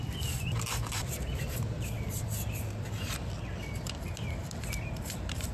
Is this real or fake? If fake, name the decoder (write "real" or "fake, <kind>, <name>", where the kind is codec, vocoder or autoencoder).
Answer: fake, vocoder, BigVGAN v2